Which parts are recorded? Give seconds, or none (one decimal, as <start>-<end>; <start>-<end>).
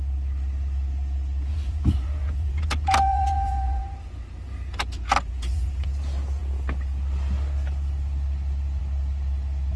0.0-1.5; 5.9-9.8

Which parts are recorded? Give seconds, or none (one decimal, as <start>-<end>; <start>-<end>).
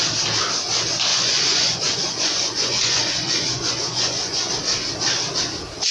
0.0-1.1; 4.5-5.9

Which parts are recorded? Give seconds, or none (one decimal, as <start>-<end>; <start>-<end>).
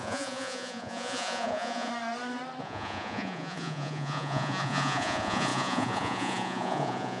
1.9-2.6